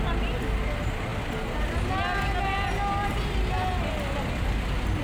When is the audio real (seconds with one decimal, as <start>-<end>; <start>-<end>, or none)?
0.0-5.0